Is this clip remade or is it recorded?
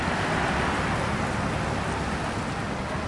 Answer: recorded